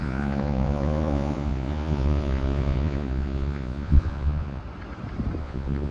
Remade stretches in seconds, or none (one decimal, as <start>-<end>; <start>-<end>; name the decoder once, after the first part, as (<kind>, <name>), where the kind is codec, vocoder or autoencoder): 0.0-4.6 (vocoder, Vocos); 5.4-5.9